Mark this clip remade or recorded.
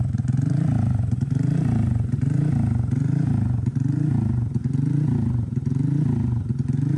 remade